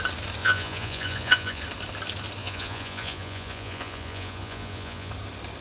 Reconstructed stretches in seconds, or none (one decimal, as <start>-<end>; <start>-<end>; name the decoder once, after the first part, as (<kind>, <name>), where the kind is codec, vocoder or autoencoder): 0.4-1.6 (vocoder, Vocos); 2.4-5.1